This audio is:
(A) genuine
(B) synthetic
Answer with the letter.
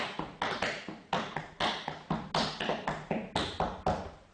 A